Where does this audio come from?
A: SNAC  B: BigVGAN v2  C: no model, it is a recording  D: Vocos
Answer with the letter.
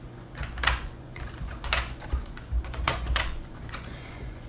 D